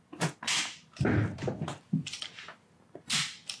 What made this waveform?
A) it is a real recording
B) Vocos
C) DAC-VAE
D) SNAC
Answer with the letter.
A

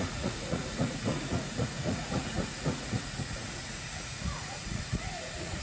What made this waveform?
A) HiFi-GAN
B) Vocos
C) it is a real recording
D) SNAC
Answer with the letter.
B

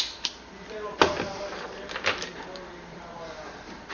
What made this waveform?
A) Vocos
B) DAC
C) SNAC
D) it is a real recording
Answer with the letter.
D